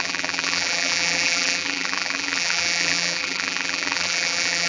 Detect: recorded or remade remade